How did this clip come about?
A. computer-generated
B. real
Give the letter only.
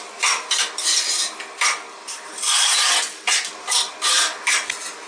B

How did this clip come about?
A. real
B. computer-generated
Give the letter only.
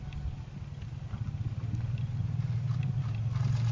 A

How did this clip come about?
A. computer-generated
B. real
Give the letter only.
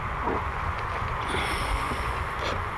A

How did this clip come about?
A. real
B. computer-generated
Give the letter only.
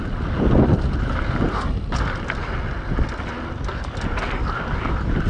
A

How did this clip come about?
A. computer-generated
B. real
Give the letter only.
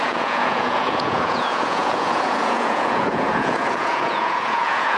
A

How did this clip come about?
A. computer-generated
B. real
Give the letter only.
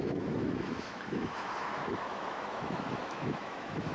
A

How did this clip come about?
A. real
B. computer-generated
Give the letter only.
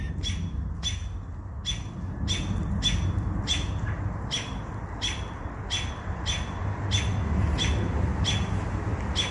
A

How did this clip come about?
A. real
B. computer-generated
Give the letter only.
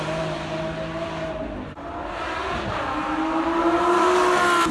A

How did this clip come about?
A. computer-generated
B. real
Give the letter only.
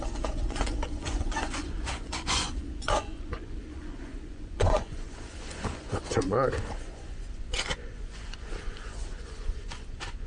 A